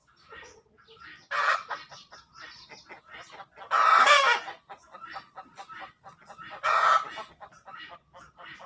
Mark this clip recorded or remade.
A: recorded